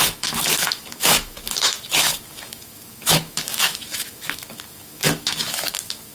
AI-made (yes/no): yes